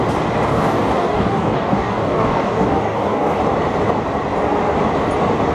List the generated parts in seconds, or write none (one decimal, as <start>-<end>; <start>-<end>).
0.5-3.4